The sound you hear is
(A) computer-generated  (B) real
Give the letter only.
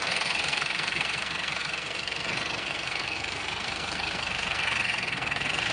A